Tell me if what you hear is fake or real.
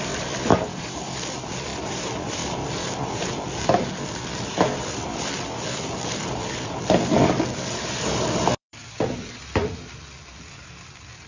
fake